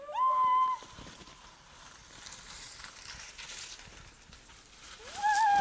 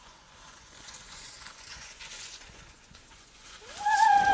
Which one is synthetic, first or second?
second